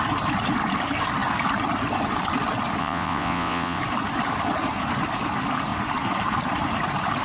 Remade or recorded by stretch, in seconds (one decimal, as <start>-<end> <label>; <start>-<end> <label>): 0.0-2.8 recorded; 2.8-3.8 remade; 3.8-7.2 recorded